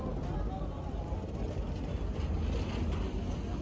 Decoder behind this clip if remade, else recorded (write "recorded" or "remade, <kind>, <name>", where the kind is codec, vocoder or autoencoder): recorded